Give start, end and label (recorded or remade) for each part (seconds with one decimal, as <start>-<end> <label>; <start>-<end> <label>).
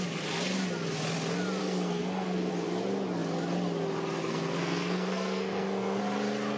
0.0-1.6 recorded; 1.6-2.5 remade; 2.5-4.2 recorded; 4.2-6.0 remade; 6.0-6.6 recorded